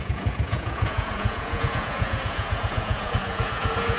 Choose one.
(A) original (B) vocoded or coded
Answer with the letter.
B